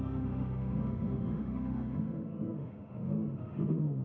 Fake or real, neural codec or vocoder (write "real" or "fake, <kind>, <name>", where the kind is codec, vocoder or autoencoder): fake, autoencoder, DAC-VAE